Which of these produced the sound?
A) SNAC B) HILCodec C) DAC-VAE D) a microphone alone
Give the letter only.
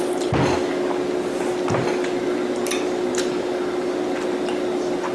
D